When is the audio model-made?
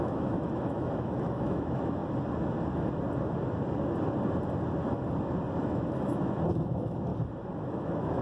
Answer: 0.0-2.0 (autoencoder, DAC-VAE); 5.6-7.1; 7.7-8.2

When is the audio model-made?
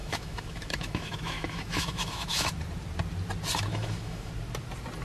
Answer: 0.0-2.5 (autoencoder, DAC-VAE); 3.7-4.3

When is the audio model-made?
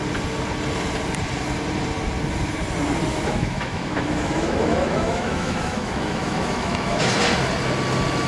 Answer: 3.1-7.1 (autoencoder, DAC-VAE)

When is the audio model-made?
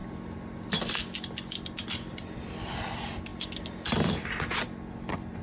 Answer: none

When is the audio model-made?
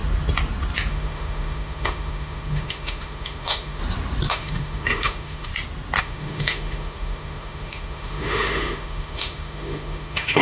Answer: 0.9-3.8 (autoencoder, DAC-VAE); 4.3-5.5; 6.0-10.4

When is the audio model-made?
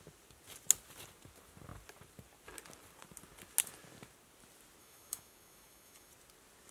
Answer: 4.8-6.1 (autoencoder, DAC-VAE)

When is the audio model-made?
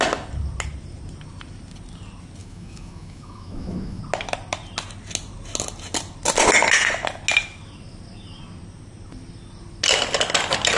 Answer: 2.4-4.0 (autoencoder, DAC-VAE)